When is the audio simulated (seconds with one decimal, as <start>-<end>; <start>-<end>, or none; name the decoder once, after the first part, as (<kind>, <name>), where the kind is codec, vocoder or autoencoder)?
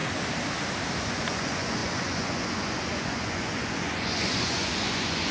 1.0-5.3 (vocoder, Vocos)